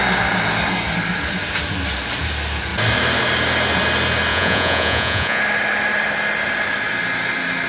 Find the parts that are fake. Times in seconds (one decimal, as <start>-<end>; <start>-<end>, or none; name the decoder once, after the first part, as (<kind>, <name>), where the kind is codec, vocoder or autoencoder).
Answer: 4.3-5.4 (vocoder, Vocos)